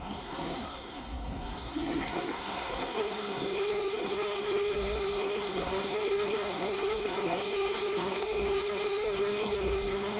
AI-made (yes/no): yes